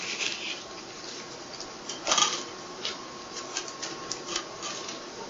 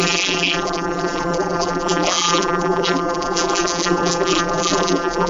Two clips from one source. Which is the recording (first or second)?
first